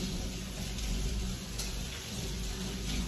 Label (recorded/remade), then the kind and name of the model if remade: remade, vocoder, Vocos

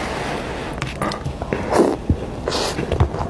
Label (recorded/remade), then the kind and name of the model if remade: recorded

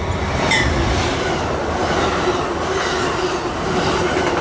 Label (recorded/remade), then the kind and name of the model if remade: recorded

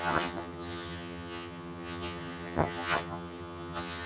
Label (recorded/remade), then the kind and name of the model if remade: remade, vocoder, HiFi-GAN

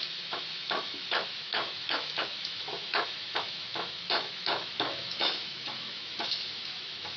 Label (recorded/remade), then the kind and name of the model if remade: remade, autoencoder, DAC-VAE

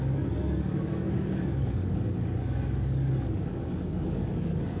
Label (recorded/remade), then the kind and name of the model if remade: remade, codec, DAC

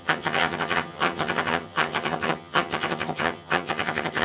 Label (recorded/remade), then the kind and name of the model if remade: remade, vocoder, HiFi-GAN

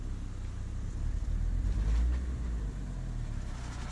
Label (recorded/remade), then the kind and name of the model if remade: recorded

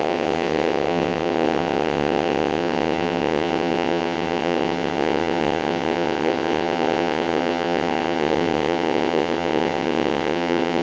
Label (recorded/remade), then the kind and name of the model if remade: remade, vocoder, WaveNeXt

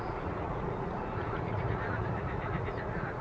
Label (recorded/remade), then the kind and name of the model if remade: remade, vocoder, Vocos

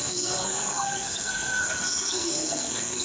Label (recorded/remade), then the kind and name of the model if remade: remade, codec, SNAC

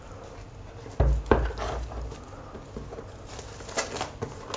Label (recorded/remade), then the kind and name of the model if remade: recorded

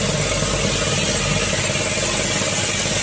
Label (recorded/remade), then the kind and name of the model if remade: recorded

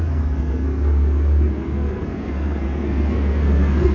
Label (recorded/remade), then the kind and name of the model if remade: remade, codec, SNAC